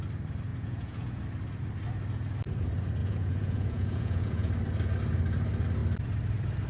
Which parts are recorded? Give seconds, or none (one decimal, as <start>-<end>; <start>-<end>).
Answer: 0.0-0.5; 1.2-3.0; 4.5-6.7